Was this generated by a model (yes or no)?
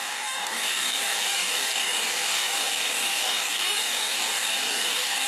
yes